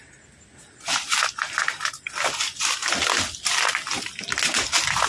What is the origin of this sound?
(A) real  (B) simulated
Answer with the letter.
A